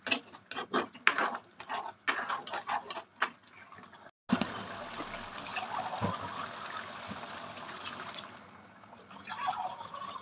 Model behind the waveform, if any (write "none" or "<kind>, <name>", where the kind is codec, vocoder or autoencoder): none